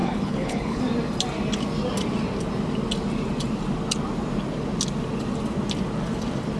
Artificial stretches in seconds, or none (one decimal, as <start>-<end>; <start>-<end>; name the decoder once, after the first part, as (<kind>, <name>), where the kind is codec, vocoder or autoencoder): 0.0-0.8 (codec, HILCodec)